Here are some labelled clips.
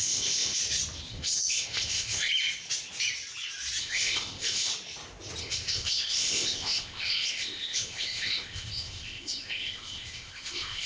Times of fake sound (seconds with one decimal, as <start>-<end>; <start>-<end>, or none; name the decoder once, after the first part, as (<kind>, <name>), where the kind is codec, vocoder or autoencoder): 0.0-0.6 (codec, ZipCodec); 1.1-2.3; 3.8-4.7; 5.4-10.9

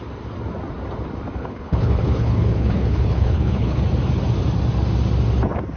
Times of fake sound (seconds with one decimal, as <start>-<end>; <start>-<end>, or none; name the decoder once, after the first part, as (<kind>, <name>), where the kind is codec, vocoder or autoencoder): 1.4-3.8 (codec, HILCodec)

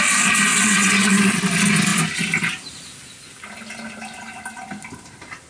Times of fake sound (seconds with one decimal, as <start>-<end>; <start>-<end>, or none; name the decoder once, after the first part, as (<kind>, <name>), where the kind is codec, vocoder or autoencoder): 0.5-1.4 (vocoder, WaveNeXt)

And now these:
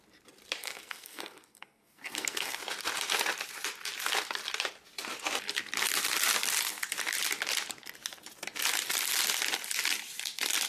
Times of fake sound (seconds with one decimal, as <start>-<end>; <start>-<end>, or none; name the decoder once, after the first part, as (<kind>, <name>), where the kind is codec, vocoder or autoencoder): 0.6-2.6 (codec, SNAC)

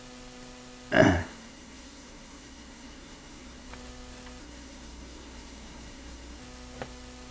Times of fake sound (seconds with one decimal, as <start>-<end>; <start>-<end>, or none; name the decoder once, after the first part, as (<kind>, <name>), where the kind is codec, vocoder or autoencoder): 1.2-3.7 (codec, SNAC); 4.4-6.4